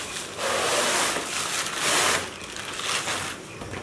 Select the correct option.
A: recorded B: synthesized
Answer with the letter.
A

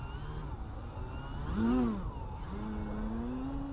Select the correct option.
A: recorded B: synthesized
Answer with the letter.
A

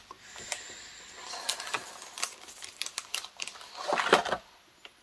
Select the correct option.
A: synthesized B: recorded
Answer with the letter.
B